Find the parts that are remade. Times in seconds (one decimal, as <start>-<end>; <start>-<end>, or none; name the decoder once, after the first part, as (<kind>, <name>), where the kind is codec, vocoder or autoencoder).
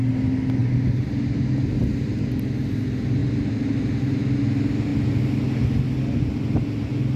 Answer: none